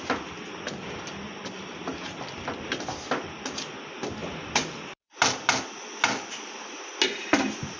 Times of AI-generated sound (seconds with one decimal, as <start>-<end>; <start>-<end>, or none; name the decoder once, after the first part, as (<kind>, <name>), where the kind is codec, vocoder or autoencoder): 4.2-5.2 (vocoder, BigVGAN v2)